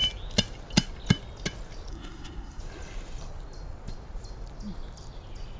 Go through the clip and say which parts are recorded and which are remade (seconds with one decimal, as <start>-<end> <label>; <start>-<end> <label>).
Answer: 0.0-1.9 recorded; 1.9-2.6 remade; 2.6-5.6 recorded